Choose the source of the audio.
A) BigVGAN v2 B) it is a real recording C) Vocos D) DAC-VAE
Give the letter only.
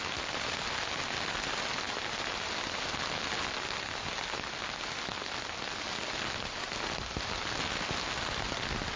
B